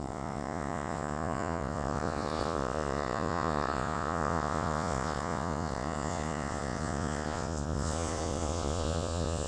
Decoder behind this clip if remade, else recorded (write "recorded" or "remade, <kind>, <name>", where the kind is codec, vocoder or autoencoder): remade, vocoder, Vocos